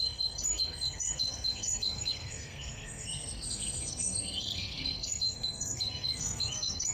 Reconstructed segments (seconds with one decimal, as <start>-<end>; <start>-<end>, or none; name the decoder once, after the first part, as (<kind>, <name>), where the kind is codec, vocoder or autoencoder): 0.0-6.9 (codec, SNAC)